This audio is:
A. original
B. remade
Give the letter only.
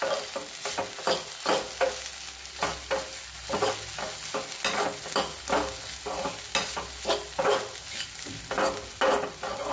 A